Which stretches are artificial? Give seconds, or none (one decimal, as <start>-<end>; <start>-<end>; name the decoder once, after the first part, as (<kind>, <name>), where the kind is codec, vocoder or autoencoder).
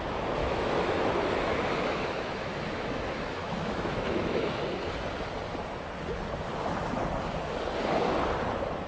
0.4-4.6 (autoencoder, DAC-VAE)